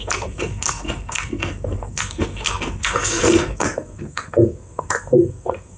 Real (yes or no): no